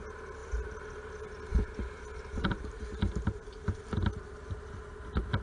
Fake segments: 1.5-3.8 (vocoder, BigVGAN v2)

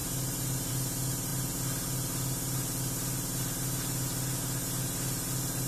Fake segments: none

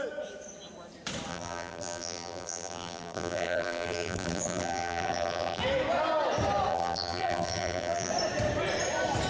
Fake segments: 1.3-5.6 (vocoder, BigVGAN v2); 6.7-8.1

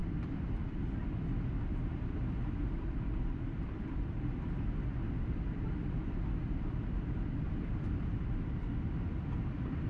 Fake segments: 0.0-9.9 (vocoder, BigVGAN v2)